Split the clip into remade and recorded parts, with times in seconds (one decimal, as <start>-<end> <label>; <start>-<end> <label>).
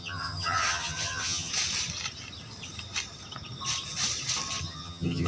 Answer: 0.0-1.5 remade; 1.5-4.6 recorded; 4.6-5.3 remade